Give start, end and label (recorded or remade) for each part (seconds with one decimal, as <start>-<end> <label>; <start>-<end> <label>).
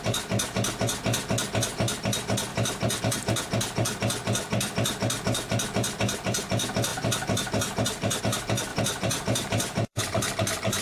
0.0-2.5 recorded; 2.5-3.0 remade; 3.0-6.9 recorded; 6.9-8.2 remade; 8.2-8.7 recorded; 8.7-10.0 remade; 10.0-10.8 recorded